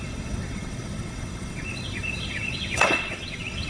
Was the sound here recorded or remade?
remade